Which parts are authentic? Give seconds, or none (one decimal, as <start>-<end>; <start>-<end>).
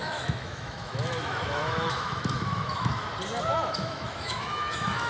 3.1-3.5